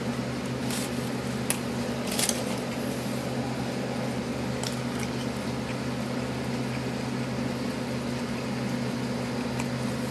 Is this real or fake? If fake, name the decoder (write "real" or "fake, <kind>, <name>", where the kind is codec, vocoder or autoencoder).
real